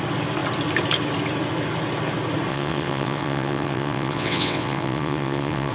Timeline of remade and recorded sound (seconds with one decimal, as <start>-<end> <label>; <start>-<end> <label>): 0.0-2.5 recorded; 2.5-5.7 remade